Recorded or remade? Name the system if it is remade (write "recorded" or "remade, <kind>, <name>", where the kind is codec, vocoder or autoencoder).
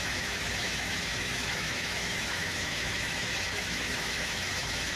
remade, autoencoder, DAC-VAE